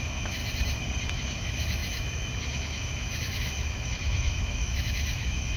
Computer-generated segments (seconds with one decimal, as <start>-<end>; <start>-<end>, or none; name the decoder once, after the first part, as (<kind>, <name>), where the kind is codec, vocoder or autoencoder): 0.0-0.4 (autoencoder, DAC-VAE); 1.1-5.6